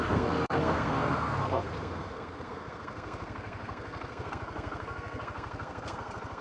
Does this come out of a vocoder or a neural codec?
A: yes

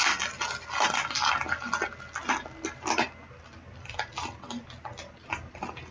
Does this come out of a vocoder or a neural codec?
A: no